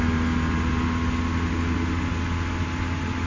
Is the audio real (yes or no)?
yes